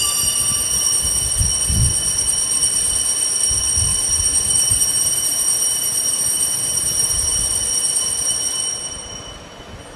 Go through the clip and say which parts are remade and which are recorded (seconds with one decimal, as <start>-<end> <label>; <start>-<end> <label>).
0.0-3.9 recorded; 3.9-7.7 remade; 7.7-8.7 recorded; 8.7-9.6 remade; 9.6-10.0 recorded